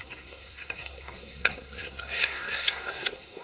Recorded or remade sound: remade